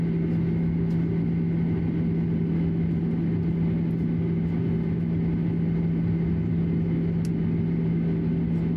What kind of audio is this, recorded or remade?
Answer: recorded